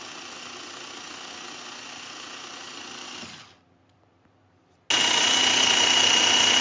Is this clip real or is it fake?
real